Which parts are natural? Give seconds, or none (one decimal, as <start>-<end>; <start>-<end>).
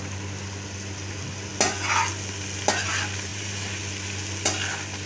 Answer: 0.0-3.3; 3.8-5.1